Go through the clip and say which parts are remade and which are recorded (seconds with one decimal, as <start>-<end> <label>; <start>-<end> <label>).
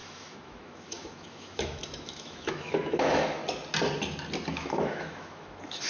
0.0-3.4 remade; 3.4-4.5 recorded; 4.5-5.9 remade